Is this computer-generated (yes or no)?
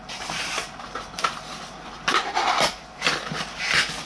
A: yes